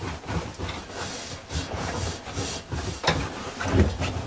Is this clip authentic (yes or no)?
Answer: yes